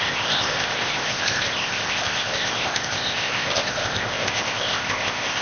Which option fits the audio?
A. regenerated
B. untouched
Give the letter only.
A